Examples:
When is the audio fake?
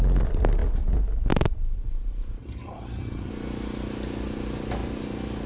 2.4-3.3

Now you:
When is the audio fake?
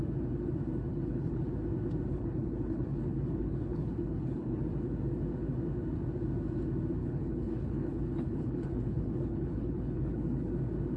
0.9-1.5; 2.1-4.6; 7.0-10.5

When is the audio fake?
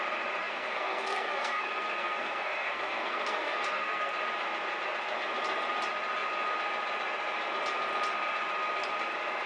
0.4-4.1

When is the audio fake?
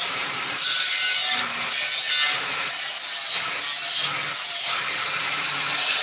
0.0-1.2; 4.8-6.0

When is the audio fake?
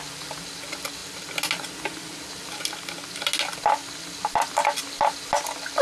none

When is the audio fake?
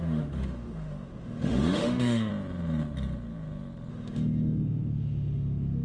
0.0-2.3; 3.9-5.8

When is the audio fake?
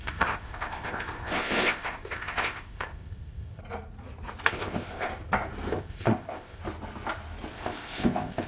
0.0-3.6; 4.5-5.1; 5.7-6.6; 7.5-8.5